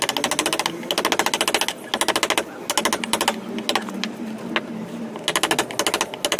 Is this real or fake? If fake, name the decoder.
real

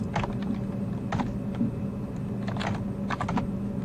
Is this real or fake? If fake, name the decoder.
real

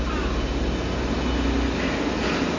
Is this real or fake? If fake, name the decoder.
real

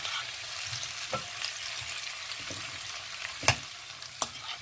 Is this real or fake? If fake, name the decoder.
real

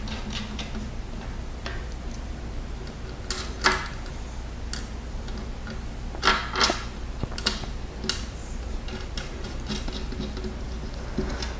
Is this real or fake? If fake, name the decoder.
real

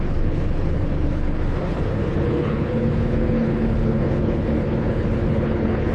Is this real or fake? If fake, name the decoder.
fake, codec, HILCodec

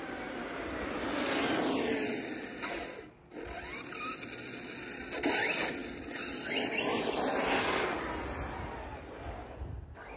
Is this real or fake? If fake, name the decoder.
real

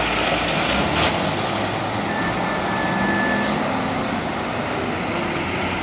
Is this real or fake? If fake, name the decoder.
real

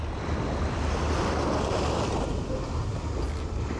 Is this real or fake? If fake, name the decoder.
real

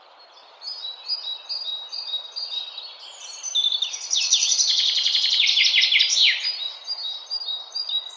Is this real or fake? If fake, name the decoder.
real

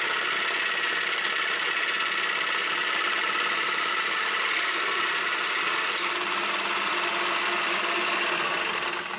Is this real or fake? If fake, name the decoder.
real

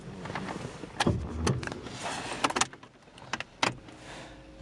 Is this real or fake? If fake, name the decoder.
real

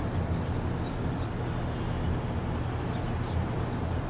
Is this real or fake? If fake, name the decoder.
real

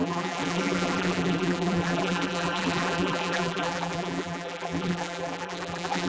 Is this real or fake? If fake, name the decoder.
fake, vocoder, BigVGAN v2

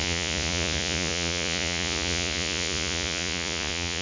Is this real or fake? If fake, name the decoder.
fake, vocoder, Vocos